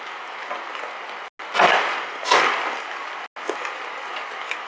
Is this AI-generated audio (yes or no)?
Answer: no